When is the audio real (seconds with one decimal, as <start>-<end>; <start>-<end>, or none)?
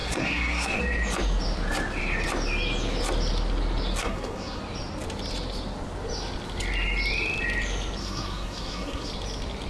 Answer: 0.8-4.0; 4.6-8.0; 9.1-9.7